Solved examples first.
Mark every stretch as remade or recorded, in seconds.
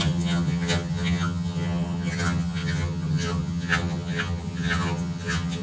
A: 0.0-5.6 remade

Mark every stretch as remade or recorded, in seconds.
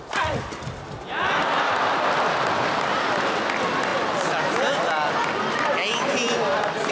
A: 0.0-6.9 recorded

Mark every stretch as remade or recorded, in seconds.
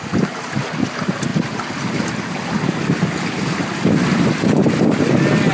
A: 0.0-5.5 recorded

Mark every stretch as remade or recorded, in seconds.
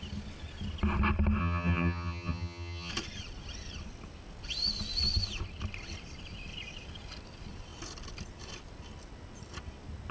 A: 0.0-1.4 recorded; 1.4-2.9 remade; 2.9-10.1 recorded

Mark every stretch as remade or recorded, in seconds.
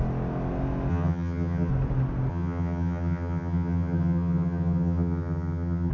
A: 0.0-0.9 recorded; 0.9-1.7 remade; 1.7-2.3 recorded; 2.3-5.9 remade